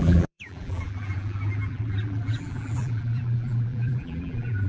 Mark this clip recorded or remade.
remade